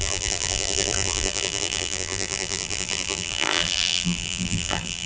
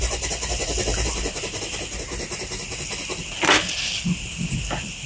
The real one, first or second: second